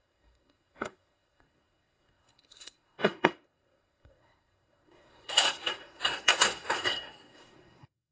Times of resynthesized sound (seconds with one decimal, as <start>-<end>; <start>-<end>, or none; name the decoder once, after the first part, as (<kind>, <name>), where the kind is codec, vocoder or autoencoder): 0.0-8.1 (codec, SNAC)